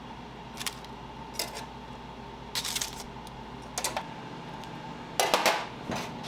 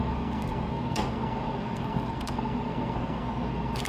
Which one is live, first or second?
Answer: first